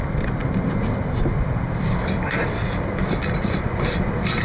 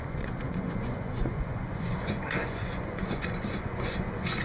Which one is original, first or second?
first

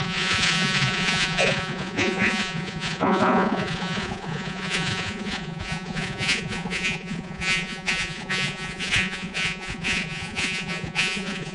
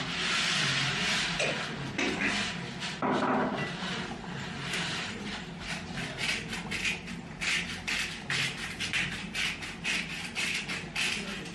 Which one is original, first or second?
second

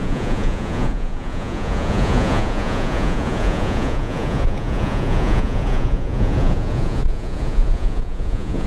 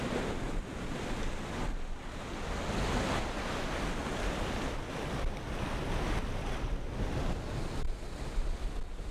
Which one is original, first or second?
second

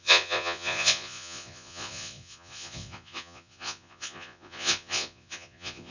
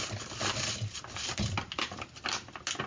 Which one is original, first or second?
second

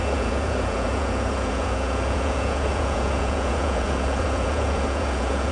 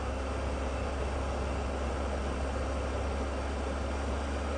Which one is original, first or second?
second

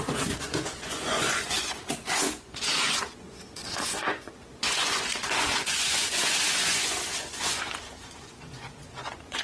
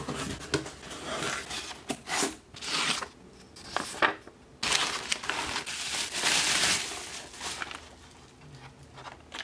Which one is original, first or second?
second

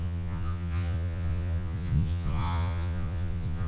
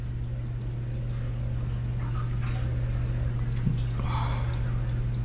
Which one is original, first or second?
second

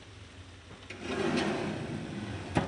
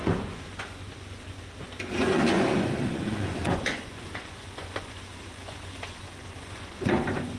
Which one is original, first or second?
first